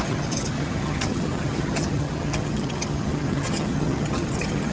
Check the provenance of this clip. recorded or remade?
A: remade